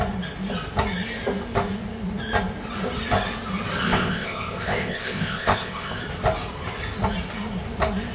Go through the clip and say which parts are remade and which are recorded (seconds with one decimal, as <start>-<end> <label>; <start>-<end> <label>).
0.0-3.8 recorded; 3.8-6.0 remade; 6.0-8.1 recorded